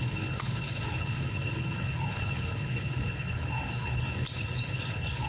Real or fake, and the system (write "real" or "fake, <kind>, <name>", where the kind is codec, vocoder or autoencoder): fake, codec, HILCodec